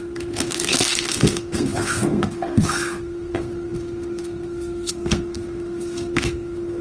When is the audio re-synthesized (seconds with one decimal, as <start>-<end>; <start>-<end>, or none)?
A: 0.0-6.8